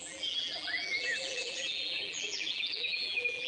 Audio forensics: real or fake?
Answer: fake